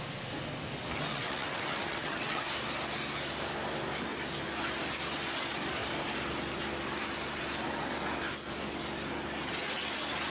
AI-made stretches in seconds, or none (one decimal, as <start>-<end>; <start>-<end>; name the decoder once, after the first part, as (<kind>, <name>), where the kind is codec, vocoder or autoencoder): 1.1-2.4 (vocoder, WaveNeXt)